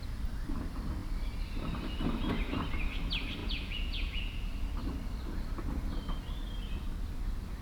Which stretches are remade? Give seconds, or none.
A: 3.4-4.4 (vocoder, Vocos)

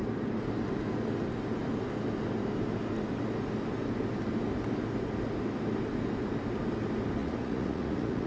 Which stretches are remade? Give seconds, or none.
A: 7.2-8.3 (vocoder, Vocos)

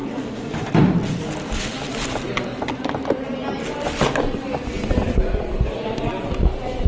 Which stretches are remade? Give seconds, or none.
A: none

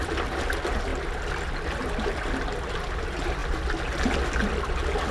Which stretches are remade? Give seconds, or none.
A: none

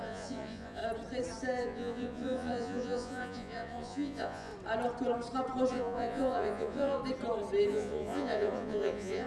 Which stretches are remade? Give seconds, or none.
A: 0.0-0.8 (vocoder, Vocos); 1.6-4.5; 5.7-7.0; 7.7-9.3

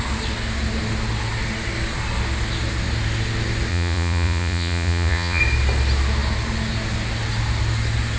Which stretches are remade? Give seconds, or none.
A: 3.7-5.4 (vocoder, Vocos)

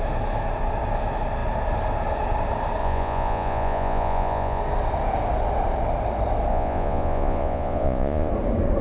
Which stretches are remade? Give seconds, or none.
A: 2.8-4.6 (vocoder, Vocos); 6.5-8.3

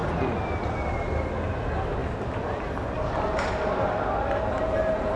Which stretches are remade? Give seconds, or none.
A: none